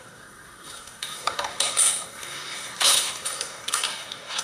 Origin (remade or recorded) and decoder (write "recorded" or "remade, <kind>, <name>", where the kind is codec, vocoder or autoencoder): remade, codec, SNAC